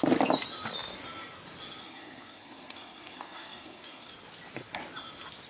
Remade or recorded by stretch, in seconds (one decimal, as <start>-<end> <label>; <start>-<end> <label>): 0.0-1.8 recorded; 1.8-4.1 remade; 4.1-5.5 recorded